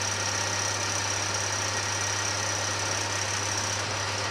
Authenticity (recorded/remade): recorded